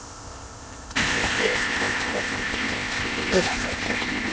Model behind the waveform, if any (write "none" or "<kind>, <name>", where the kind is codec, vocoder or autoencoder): codec, ZipCodec